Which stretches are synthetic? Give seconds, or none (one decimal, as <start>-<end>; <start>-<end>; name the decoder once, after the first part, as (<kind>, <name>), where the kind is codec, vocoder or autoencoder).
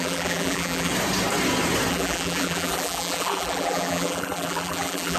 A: 0.0-0.9 (vocoder, BigVGAN v2); 1.9-5.2